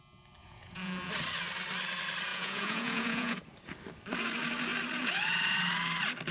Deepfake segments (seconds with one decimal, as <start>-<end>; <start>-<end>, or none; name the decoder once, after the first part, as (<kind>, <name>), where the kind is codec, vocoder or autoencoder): 0.4-1.1 (vocoder, Vocos); 2.3-3.4

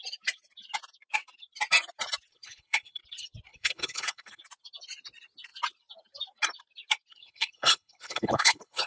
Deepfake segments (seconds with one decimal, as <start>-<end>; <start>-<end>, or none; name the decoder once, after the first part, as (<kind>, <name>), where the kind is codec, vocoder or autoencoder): 2.3-3.0 (codec, HILCodec); 3.5-4.4; 7.1-8.9

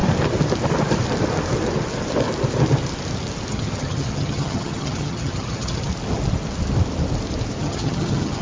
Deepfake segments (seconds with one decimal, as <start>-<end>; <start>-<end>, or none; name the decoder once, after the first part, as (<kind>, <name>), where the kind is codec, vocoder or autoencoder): 3.5-5.9 (vocoder, HiFi-GAN); 7.6-8.4

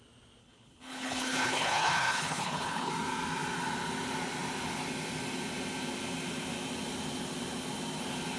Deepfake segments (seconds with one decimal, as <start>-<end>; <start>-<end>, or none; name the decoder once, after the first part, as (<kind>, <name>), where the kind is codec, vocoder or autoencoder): 0.4-2.9 (codec, HILCodec)

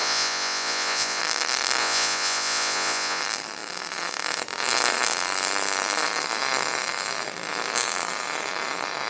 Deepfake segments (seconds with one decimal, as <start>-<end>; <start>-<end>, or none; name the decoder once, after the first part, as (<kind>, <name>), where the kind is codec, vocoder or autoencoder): 0.0-1.2 (vocoder, Vocos); 1.8-3.2

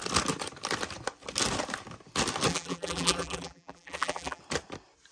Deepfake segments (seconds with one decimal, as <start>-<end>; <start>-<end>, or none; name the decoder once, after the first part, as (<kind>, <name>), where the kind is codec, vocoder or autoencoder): 2.5-4.4 (vocoder, BigVGAN v2)

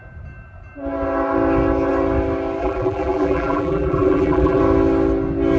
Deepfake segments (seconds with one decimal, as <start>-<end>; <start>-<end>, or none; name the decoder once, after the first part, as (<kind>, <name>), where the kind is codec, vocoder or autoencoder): 2.6-4.6 (vocoder, BigVGAN v2)